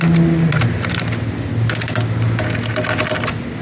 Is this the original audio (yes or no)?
yes